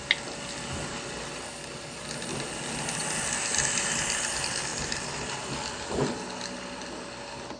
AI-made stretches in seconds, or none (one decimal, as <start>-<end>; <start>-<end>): none